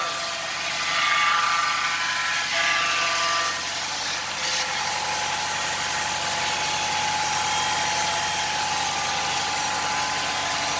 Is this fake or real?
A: real